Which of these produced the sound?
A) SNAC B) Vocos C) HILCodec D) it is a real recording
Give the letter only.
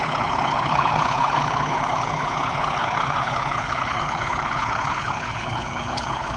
C